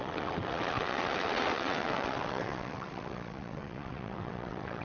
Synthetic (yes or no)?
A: yes